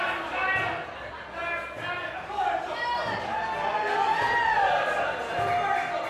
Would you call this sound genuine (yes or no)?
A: yes